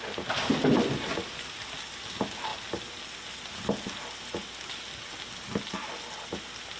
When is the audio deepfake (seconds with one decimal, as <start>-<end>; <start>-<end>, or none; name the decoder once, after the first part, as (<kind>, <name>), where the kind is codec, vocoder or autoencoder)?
none